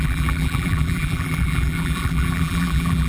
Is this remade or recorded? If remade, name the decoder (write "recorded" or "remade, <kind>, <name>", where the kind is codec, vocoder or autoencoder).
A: remade, vocoder, BigVGAN v2